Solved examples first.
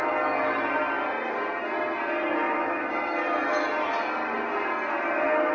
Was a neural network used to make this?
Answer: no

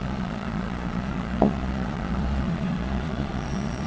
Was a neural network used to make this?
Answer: yes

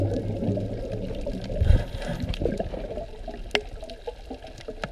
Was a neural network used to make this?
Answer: no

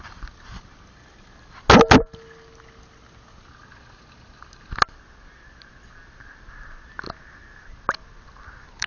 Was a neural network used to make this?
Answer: no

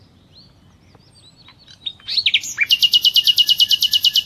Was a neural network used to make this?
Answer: no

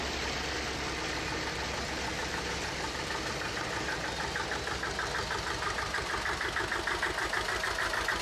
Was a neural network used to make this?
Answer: no